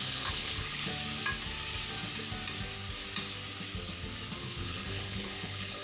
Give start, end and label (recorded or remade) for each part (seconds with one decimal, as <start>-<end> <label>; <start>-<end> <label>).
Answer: 0.0-0.9 remade; 0.9-4.4 recorded; 4.4-5.8 remade